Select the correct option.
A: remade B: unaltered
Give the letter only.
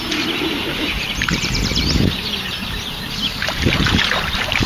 A